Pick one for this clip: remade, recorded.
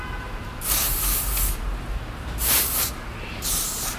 remade